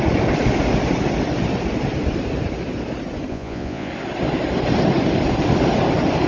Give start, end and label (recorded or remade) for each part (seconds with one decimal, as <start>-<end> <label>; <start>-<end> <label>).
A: 0.0-3.3 recorded; 3.3-3.9 remade; 3.9-6.3 recorded